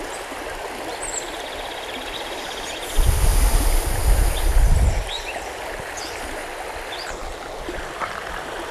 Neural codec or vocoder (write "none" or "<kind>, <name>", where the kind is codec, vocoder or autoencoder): none